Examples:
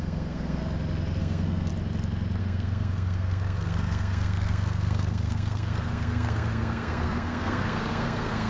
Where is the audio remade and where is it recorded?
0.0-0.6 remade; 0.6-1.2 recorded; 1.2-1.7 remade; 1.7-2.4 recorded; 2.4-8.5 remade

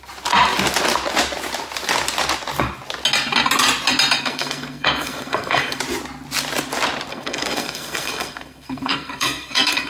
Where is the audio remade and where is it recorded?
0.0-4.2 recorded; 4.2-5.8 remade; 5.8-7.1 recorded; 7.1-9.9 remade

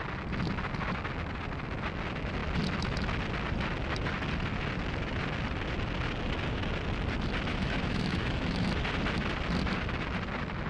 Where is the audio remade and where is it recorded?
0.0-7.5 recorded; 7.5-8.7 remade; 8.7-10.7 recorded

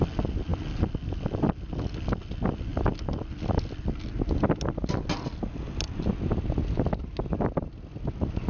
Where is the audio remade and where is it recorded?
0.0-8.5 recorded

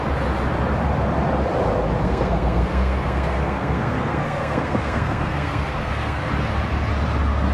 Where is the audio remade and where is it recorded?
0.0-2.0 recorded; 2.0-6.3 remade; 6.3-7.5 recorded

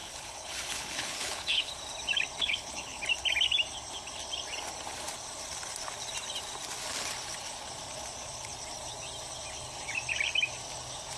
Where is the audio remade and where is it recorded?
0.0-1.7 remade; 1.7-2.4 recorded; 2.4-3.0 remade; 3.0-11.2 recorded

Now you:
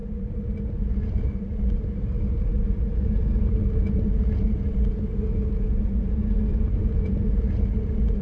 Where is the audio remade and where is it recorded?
0.0-8.2 recorded